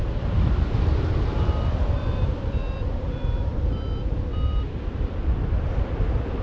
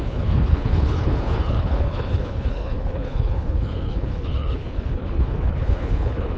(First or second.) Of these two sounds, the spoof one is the second